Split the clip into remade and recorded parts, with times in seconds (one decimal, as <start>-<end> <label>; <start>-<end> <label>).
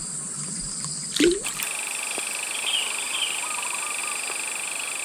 0.0-4.0 remade; 4.0-5.0 recorded